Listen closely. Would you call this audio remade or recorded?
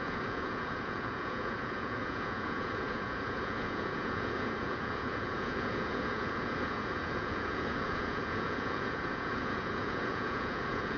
remade